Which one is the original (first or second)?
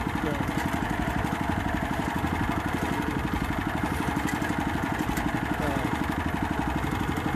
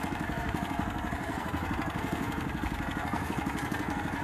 first